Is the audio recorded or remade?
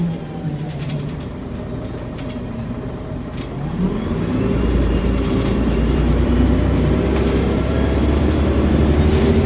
remade